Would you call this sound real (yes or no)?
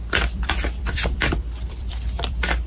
no